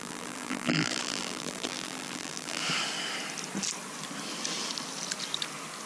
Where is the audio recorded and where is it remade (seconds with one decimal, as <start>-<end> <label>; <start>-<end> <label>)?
0.0-2.6 remade; 2.6-5.9 recorded